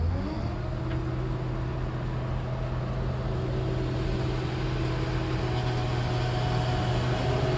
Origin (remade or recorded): recorded